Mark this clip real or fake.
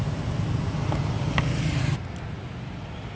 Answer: real